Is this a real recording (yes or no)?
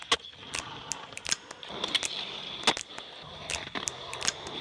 yes